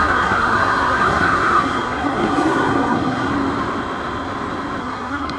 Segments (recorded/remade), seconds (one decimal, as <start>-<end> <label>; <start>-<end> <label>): 0.0-3.3 remade; 3.3-4.8 recorded; 4.8-5.4 remade